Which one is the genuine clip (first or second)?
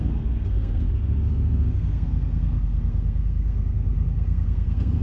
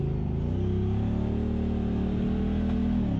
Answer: second